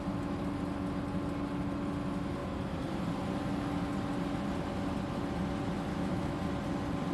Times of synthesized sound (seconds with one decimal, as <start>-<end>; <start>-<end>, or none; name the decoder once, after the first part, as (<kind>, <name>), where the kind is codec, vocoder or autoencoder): 5.9-6.4 (autoencoder, DAC-VAE)